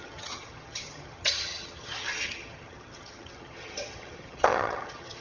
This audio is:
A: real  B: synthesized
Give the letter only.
B